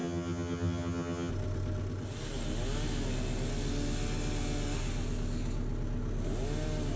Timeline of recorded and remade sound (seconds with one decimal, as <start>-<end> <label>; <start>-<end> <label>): 0.0-1.3 remade; 1.3-7.0 recorded